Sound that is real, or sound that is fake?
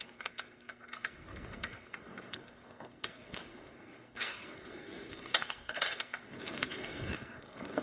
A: fake